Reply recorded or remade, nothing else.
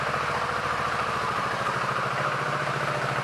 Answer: recorded